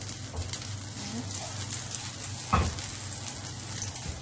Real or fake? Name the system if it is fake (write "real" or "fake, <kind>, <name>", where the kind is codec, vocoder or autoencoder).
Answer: real